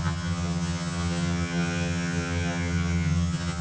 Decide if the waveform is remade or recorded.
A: remade